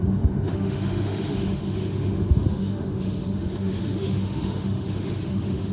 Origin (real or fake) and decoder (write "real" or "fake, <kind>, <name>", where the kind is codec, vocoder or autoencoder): fake, autoencoder, DAC-VAE